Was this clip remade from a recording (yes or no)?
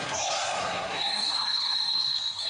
yes